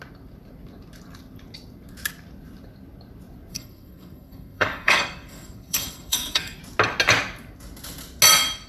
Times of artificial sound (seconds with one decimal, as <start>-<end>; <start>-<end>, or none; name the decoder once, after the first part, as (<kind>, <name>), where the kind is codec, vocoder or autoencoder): 3.5-6.6 (codec, SNAC)